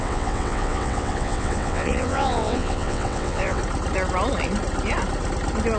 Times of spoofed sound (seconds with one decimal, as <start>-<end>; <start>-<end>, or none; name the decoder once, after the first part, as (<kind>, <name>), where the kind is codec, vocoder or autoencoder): 0.0-3.6 (vocoder, WaveNeXt)